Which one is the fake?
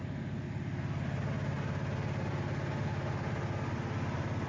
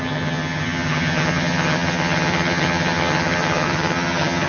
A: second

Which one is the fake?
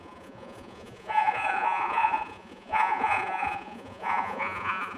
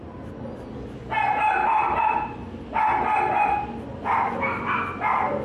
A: first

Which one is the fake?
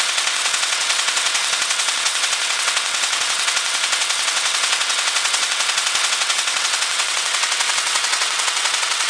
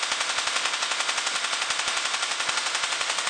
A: first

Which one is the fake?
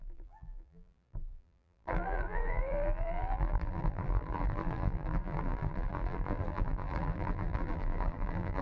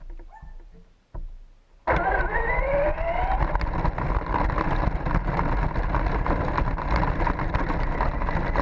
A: first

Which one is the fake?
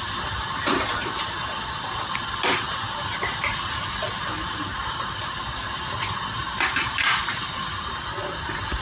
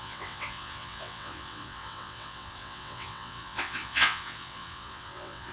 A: second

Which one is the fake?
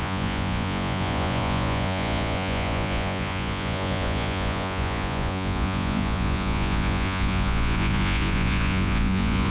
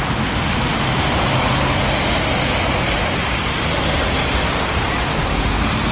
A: first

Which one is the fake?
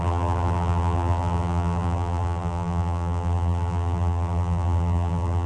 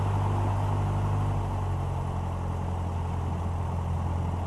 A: first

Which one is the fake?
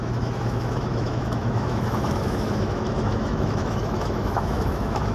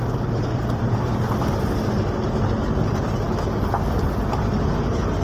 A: first